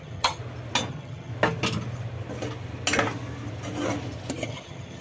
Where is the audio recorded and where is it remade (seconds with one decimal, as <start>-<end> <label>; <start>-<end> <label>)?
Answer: 0.0-0.4 remade; 0.4-0.9 recorded; 0.9-1.3 remade; 1.3-4.3 recorded; 4.3-5.0 remade